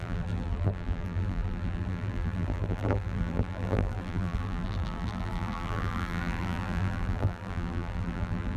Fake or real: fake